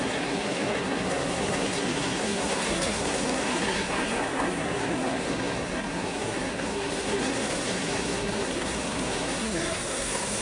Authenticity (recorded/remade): remade